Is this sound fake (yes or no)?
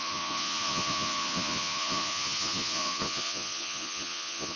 yes